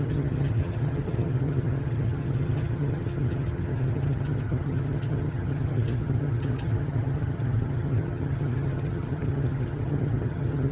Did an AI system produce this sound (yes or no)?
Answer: yes